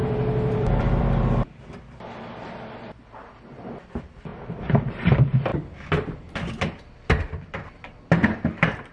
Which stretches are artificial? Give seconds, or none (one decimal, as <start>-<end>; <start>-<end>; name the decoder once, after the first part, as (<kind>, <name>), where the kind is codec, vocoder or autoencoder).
0.0-5.5 (vocoder, BigVGAN v2); 6.2-8.9